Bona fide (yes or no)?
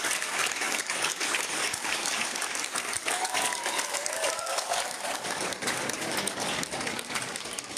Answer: no